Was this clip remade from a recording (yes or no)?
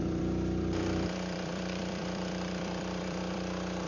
yes